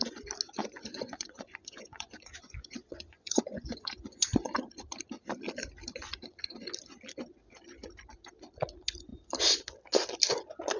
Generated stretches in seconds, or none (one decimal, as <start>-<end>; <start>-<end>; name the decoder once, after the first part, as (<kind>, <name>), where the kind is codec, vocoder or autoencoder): 0.6-4.5 (vocoder, Vocos)